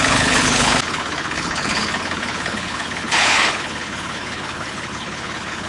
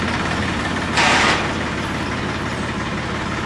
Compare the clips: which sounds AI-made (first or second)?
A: first